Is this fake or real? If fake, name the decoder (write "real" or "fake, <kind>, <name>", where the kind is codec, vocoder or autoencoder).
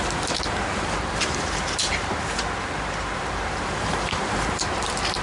fake, vocoder, BigVGAN v2